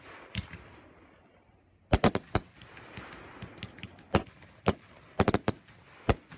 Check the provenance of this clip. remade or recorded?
recorded